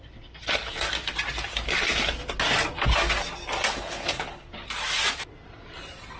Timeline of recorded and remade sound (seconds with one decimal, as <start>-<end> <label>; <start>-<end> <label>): 0.0-3.7 recorded; 3.7-4.5 remade; 4.5-6.2 recorded